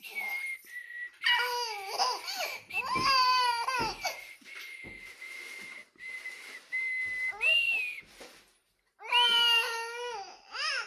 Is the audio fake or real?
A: real